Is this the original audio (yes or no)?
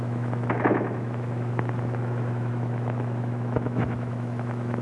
no